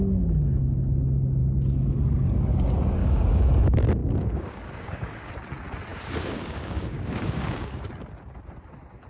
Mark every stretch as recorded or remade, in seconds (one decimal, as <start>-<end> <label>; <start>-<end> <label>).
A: 0.0-3.0 recorded; 3.0-3.5 remade; 3.5-4.0 recorded; 4.0-5.3 remade; 5.3-5.9 recorded; 5.9-7.9 remade; 7.9-9.1 recorded